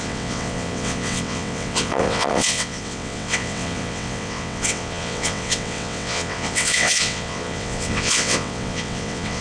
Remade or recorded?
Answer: remade